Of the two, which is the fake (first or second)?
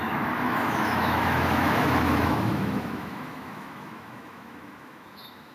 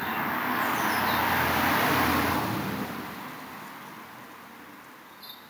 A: first